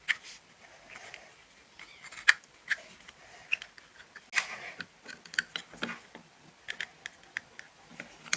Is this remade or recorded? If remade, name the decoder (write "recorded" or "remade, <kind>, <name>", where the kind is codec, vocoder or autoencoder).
recorded